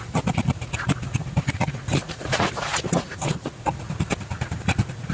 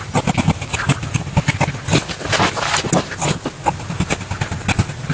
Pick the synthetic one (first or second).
first